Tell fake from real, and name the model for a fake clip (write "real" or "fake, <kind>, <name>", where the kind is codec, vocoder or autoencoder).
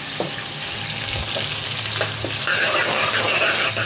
real